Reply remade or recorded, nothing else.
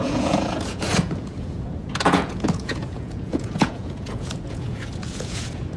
remade